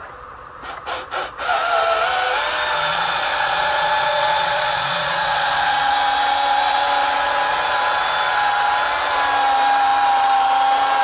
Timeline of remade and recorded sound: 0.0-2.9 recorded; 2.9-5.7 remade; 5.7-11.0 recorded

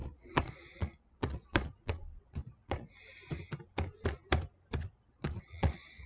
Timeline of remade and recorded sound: 0.0-2.9 remade; 2.9-4.8 recorded; 4.8-6.1 remade

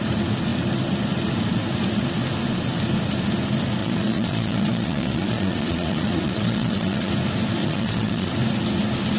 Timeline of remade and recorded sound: 0.0-3.8 recorded; 3.8-7.1 remade; 7.1-7.6 recorded; 7.6-8.3 remade; 8.3-9.2 recorded

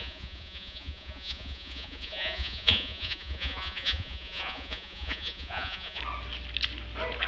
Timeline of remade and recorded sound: 0.0-6.0 remade; 6.0-7.3 recorded

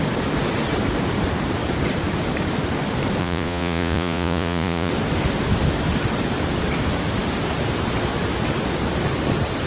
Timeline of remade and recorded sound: 0.0-3.2 recorded; 3.2-4.9 remade; 4.9-9.7 recorded